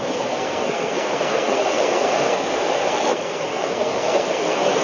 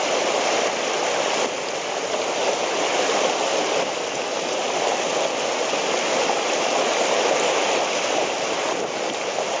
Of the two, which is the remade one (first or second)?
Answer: first